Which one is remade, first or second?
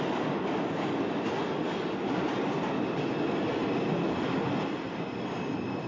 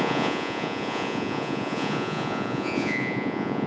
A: second